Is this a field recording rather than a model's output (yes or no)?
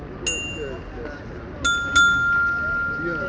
yes